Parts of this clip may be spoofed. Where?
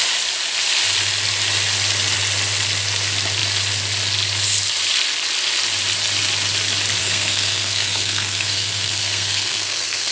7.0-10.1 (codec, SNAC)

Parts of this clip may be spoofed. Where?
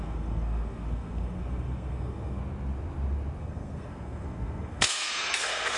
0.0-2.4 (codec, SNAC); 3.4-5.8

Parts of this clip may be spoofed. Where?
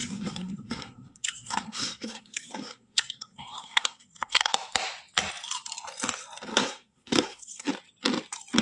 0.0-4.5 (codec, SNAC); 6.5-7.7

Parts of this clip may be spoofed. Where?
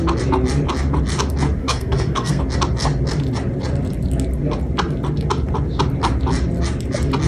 1.6-2.4 (codec, SNAC)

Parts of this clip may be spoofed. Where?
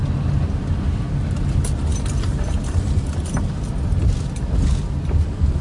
none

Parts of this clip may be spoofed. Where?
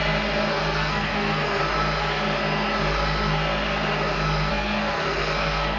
0.5-1.6 (codec, SNAC); 4.5-5.8